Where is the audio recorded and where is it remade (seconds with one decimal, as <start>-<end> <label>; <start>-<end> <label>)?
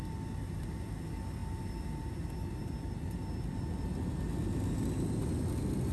0.0-5.9 recorded